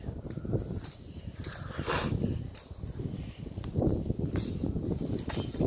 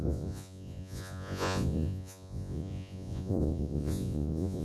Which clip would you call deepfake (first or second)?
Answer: second